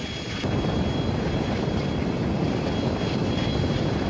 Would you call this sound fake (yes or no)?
no